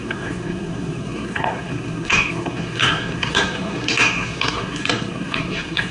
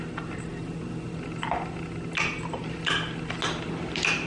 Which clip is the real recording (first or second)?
second